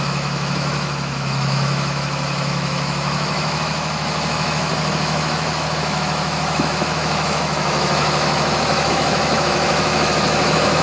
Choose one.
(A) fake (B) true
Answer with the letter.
A